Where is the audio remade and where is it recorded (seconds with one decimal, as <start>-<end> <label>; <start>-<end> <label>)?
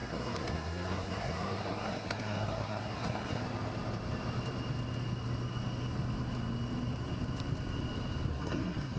0.0-3.4 remade; 3.4-8.3 recorded; 8.3-9.0 remade